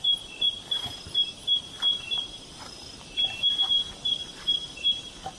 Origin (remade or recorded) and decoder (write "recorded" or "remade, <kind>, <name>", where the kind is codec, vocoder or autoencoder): remade, vocoder, BigVGAN v2